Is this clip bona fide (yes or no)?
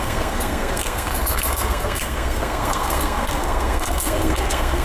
no